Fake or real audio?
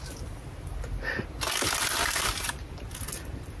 real